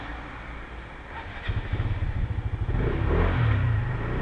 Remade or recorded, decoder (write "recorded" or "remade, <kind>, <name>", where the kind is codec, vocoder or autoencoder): recorded